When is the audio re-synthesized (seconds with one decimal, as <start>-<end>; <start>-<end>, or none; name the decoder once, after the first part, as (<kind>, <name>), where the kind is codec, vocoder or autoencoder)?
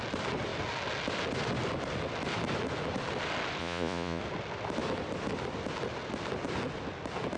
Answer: 3.6-4.2 (vocoder, Vocos)